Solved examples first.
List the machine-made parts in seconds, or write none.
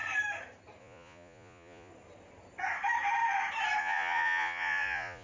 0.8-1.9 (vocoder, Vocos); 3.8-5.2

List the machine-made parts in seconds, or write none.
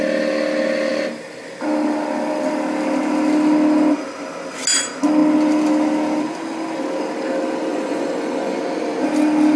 7.7-8.6 (vocoder, Vocos)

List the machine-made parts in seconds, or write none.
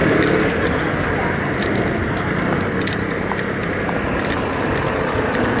none